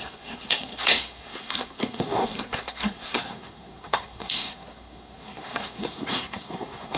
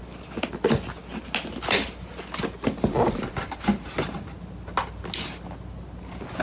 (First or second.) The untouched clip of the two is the second